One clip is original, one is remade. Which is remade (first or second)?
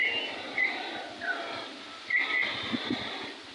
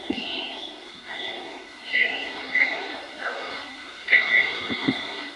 second